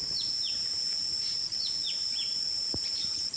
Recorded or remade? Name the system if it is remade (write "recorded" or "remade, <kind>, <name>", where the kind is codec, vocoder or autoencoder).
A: remade, vocoder, BigVGAN v2